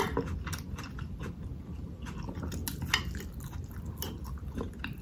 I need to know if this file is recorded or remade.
recorded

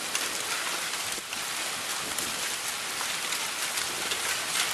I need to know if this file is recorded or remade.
recorded